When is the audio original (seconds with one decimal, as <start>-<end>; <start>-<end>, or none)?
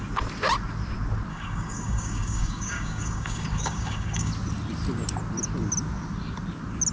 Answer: 0.0-1.3; 4.3-6.9